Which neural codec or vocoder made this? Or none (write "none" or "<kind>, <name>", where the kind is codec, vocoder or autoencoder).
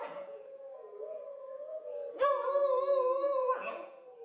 vocoder, Vocos